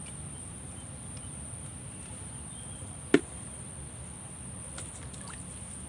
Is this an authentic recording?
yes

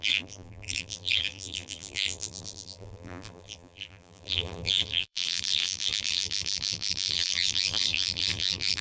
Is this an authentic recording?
no